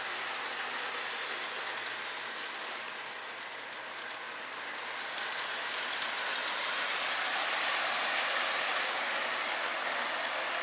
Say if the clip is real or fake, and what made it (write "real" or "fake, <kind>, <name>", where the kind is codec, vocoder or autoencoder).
real